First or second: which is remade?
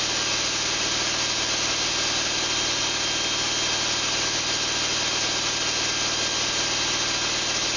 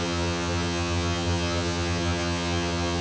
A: second